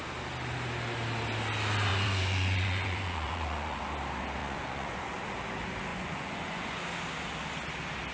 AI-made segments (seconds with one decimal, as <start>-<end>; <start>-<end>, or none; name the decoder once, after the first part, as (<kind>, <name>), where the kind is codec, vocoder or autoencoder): 1.9-3.8 (vocoder, Vocos); 4.4-5.2; 5.9-6.8